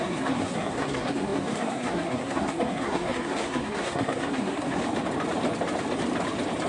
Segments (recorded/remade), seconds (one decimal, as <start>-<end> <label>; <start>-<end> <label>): 0.0-4.8 remade; 4.8-6.7 recorded